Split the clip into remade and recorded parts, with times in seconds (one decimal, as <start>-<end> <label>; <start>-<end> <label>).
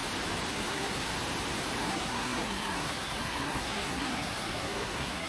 0.0-0.5 recorded; 0.5-1.1 remade; 1.1-1.8 recorded; 1.8-5.3 remade